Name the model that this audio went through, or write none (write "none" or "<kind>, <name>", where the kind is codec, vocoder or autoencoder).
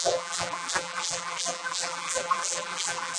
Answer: vocoder, BigVGAN v2